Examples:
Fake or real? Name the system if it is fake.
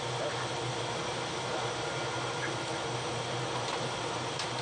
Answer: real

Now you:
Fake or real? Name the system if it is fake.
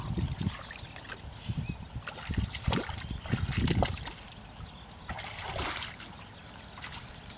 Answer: real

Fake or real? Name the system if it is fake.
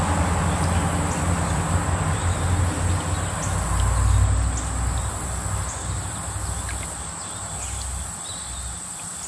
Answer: real